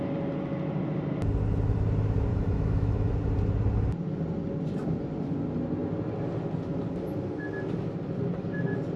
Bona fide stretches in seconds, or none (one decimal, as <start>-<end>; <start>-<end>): 0.0-2.3; 3.1-9.0